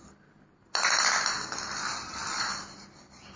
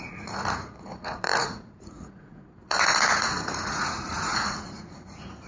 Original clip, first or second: first